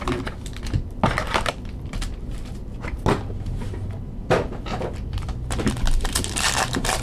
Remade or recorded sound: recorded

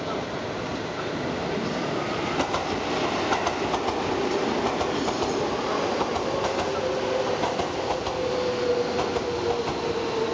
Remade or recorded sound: recorded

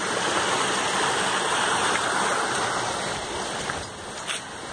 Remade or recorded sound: recorded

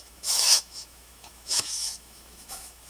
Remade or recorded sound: remade